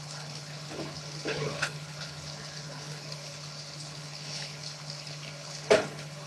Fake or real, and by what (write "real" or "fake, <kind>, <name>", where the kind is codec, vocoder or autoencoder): fake, codec, HILCodec